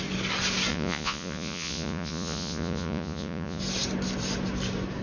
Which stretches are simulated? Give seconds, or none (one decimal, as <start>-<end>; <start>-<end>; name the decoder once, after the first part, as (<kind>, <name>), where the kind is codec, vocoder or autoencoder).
0.7-3.6 (vocoder, Vocos)